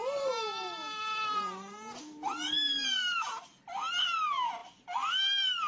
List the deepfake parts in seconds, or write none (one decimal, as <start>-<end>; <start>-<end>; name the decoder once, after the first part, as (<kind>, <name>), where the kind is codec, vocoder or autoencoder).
none